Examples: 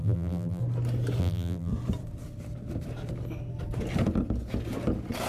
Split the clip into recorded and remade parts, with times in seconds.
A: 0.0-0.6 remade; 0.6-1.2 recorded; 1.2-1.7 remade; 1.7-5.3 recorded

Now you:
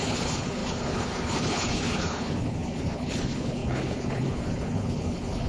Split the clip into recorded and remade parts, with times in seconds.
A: 0.0-5.5 remade

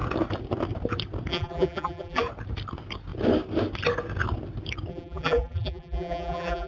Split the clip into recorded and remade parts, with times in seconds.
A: 0.0-1.3 recorded; 1.3-2.2 remade; 2.2-4.9 recorded; 4.9-6.7 remade

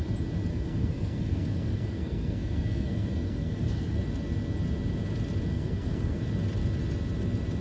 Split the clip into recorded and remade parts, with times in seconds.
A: 0.0-0.5 recorded; 0.5-4.0 remade; 4.0-5.5 recorded; 5.5-6.2 remade; 6.2-7.6 recorded

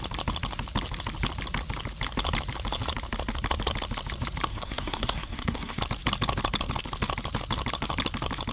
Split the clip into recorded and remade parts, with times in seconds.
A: 0.0-4.5 recorded; 4.5-5.8 remade; 5.8-8.5 recorded

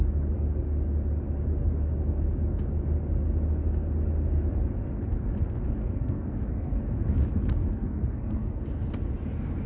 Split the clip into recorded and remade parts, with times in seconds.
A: 0.0-5.8 recorded; 5.8-6.8 remade; 6.8-7.7 recorded; 7.7-8.6 remade; 8.6-9.7 recorded

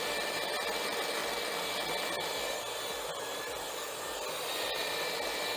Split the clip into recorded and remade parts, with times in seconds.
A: 0.0-5.6 recorded

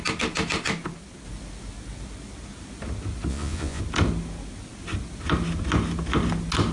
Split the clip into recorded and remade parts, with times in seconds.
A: 0.0-3.3 recorded; 3.3-3.8 remade; 3.8-6.7 recorded